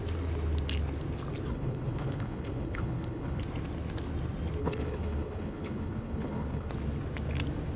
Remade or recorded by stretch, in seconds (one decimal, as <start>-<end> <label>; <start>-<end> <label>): 0.0-1.5 recorded; 1.5-3.4 remade; 3.4-4.6 recorded; 4.6-6.7 remade; 6.7-7.8 recorded

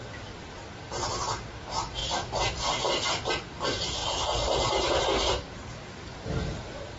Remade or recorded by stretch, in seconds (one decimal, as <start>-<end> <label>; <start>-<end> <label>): 0.0-7.0 recorded